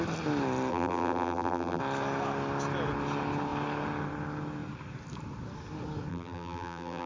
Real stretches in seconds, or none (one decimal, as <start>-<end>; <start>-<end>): 0.0-0.7; 1.8-6.1